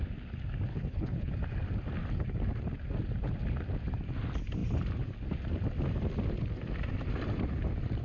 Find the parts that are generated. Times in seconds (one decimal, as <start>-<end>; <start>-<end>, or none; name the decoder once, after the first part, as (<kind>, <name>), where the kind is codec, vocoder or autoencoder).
0.7-1.3 (codec, HILCodec)